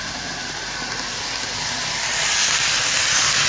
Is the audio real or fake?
real